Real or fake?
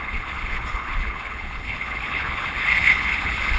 fake